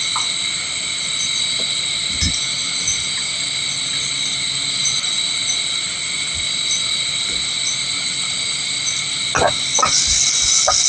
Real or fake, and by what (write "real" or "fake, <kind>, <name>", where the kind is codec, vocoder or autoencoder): real